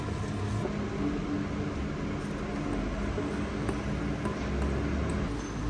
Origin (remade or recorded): recorded